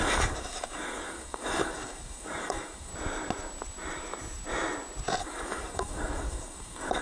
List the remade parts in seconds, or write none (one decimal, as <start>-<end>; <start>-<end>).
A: 0.0-2.9; 5.2-7.0